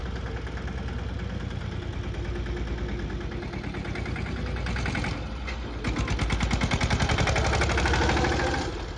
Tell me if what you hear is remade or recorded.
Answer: recorded